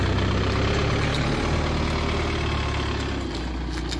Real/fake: real